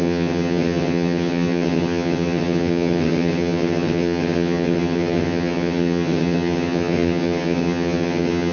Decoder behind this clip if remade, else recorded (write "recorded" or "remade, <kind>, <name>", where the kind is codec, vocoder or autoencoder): remade, vocoder, HiFi-GAN